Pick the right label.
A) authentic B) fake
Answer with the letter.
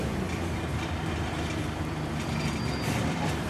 A